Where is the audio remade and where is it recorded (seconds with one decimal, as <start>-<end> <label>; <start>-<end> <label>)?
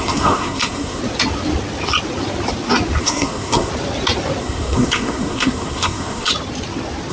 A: 0.0-1.0 remade; 1.0-3.0 recorded; 3.0-3.7 remade; 3.7-4.4 recorded; 4.4-6.3 remade; 6.3-7.1 recorded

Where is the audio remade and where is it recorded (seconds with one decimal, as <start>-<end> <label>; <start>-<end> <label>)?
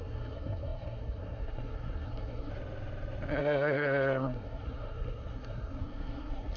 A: 0.0-2.5 remade; 2.5-3.4 recorded; 3.4-6.6 remade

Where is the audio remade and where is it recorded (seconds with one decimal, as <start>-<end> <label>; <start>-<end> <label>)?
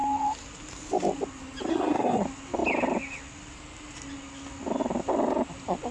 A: 0.0-1.7 recorded; 1.7-2.2 remade; 2.2-5.9 recorded